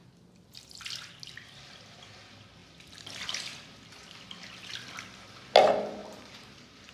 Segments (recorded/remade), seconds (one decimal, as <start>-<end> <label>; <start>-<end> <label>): 0.0-6.0 recorded; 6.0-6.9 remade